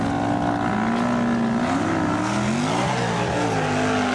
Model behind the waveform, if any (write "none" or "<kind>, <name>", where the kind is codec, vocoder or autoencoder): none